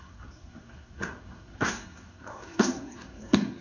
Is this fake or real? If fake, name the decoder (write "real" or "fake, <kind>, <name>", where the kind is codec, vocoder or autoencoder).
fake, codec, SNAC